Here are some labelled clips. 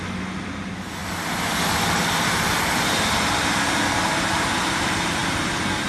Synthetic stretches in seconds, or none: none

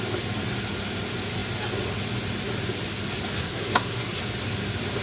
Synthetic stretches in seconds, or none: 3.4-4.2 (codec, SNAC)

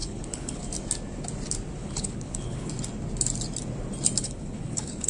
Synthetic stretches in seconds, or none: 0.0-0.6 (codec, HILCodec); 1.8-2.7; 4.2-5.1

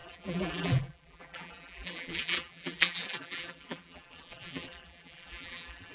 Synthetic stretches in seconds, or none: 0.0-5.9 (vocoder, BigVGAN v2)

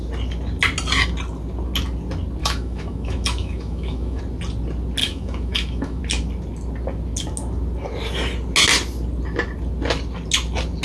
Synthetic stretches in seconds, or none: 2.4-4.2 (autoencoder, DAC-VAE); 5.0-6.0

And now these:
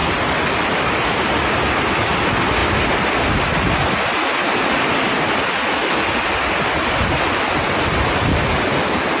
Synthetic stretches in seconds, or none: none

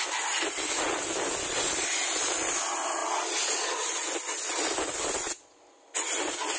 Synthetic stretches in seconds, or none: none